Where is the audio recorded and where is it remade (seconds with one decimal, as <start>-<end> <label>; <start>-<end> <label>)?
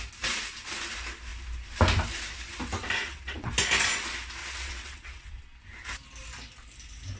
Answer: 0.0-3.0 recorded; 3.0-3.5 remade; 3.5-4.4 recorded; 4.4-5.4 remade; 5.4-7.2 recorded